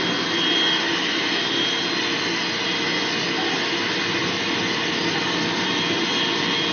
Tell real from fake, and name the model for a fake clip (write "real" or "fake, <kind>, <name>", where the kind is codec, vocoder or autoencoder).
real